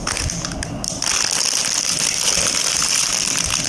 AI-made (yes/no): no